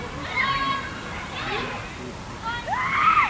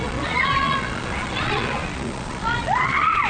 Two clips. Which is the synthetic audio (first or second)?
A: second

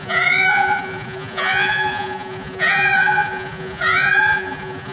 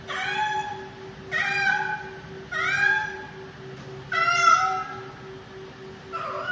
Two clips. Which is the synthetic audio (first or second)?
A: first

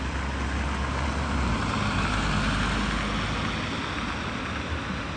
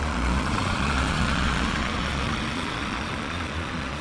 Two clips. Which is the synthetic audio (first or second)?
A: second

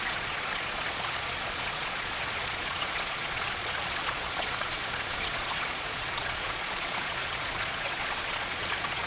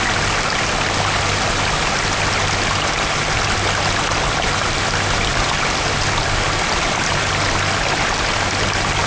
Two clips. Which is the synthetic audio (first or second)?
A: first